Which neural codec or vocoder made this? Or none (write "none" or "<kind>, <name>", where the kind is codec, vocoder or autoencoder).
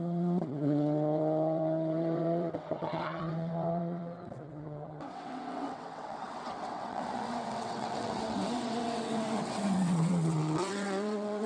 vocoder, WaveNeXt